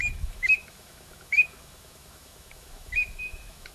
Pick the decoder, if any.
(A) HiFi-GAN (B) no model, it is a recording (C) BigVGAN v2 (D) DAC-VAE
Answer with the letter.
D